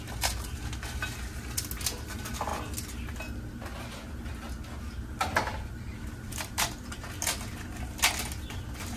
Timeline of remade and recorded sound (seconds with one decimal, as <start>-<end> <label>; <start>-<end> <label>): 0.0-9.0 recorded